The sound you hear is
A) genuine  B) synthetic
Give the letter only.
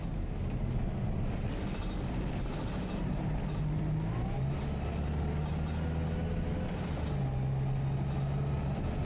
A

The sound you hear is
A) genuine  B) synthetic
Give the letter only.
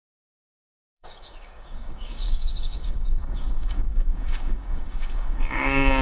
B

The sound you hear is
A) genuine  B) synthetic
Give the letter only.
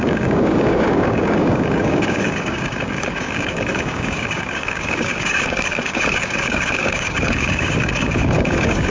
B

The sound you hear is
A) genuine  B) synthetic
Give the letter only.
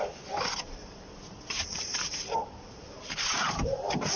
A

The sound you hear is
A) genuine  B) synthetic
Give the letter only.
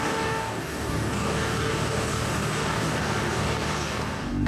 B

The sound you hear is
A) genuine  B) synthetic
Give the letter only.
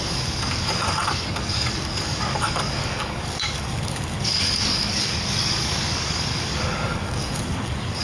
B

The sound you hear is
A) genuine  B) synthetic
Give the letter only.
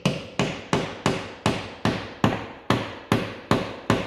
A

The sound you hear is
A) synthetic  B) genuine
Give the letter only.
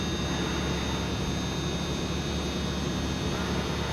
B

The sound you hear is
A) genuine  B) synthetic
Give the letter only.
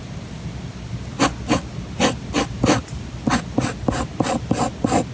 A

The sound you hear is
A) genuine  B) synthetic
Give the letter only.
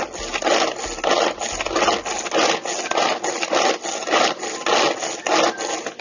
A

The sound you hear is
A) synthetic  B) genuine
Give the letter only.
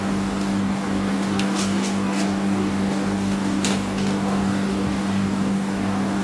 A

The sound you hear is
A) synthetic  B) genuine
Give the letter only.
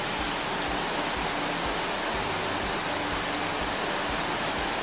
B